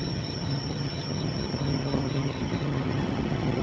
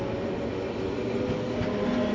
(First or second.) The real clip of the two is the second